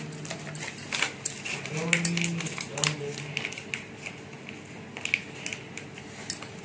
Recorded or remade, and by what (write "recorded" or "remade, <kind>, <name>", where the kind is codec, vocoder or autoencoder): recorded